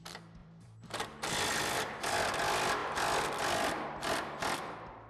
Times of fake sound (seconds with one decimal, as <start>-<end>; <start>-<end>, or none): 0.0-5.1